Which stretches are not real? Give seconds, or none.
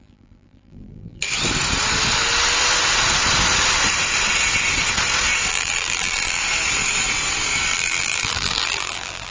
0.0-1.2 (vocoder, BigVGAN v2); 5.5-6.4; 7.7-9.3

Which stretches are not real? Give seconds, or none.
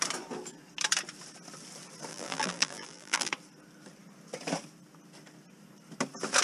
2.1-3.3 (vocoder, BigVGAN v2)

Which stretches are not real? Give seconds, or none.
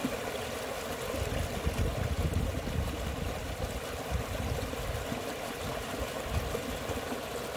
0.0-0.7 (vocoder, BigVGAN v2); 2.5-6.3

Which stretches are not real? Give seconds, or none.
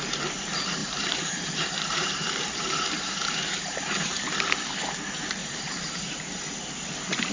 0.8-4.2 (vocoder, BigVGAN v2); 5.4-6.2